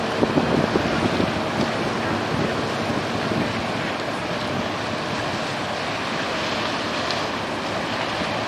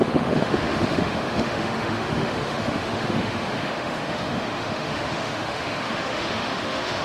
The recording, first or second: first